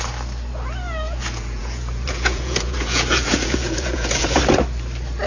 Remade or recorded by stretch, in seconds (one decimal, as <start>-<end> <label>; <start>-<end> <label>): 0.0-1.2 recorded; 1.2-4.4 remade; 4.4-5.3 recorded